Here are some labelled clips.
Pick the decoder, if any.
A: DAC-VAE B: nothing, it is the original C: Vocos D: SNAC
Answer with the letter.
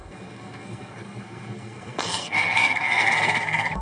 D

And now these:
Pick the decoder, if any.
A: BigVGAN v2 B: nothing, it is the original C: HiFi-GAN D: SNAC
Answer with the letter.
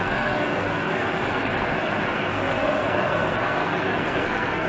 D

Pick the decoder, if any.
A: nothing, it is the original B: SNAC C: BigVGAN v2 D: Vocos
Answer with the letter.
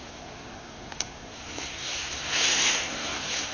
B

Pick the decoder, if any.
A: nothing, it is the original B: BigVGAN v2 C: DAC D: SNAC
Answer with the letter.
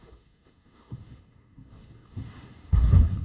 D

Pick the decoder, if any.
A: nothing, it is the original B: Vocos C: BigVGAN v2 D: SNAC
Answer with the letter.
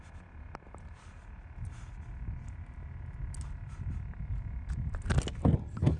A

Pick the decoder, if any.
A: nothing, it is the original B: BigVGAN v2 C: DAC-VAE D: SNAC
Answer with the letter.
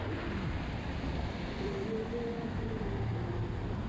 A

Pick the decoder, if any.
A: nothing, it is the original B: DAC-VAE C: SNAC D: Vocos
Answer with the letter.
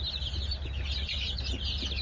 A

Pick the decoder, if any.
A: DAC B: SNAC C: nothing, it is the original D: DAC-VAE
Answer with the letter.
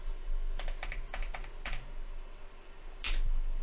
C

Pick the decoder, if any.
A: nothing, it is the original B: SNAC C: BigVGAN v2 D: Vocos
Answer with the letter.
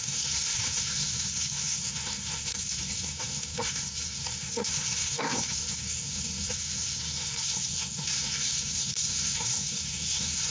B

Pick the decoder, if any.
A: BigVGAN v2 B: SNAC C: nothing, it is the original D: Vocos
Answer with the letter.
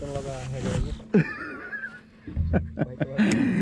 C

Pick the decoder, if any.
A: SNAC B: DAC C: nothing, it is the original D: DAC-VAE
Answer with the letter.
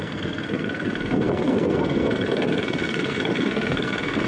A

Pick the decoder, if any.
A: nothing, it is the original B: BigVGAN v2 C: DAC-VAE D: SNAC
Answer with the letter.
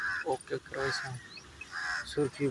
A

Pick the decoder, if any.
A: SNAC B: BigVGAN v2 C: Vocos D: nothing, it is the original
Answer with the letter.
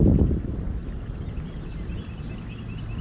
D